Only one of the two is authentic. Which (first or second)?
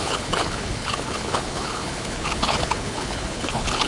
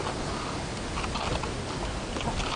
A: second